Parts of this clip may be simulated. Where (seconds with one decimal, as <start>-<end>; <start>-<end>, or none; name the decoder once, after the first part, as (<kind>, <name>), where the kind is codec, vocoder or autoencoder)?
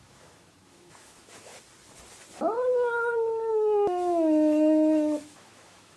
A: 0.0-1.5 (autoencoder, DAC-VAE); 3.5-6.0